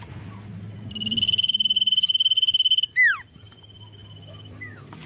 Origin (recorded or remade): recorded